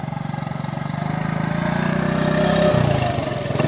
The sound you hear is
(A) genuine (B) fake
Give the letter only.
A